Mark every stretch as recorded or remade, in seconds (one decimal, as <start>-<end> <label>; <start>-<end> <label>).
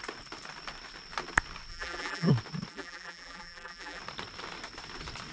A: 0.0-1.7 recorded; 1.7-2.3 remade; 2.3-2.7 recorded; 2.7-4.0 remade; 4.0-5.3 recorded